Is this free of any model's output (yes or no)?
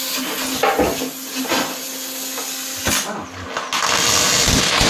yes